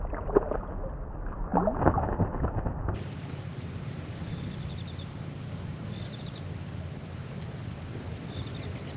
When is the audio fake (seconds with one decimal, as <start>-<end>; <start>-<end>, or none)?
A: none